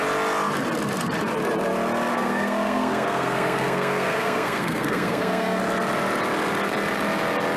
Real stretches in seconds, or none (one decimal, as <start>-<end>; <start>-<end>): 0.0-2.1; 5.6-7.6